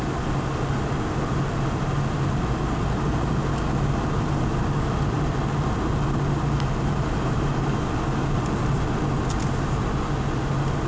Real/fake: real